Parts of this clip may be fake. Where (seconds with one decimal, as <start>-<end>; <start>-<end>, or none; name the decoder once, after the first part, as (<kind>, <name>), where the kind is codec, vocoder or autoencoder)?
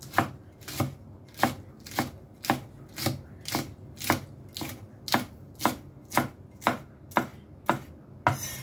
none